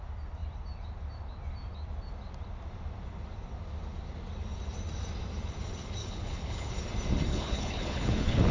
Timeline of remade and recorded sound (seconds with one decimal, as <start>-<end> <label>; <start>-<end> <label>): 0.0-6.0 recorded; 6.0-6.7 remade; 6.7-7.3 recorded; 7.3-8.5 remade